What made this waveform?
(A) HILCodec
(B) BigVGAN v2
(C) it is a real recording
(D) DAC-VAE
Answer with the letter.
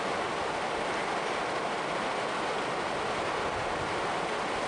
C